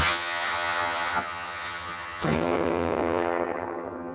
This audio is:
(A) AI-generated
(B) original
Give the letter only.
A